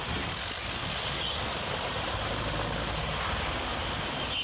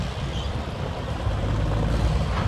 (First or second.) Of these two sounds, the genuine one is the first